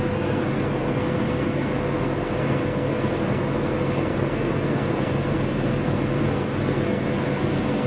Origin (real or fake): fake